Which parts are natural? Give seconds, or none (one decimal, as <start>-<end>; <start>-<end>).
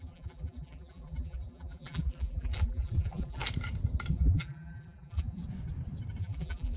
3.4-4.1; 5.4-6.2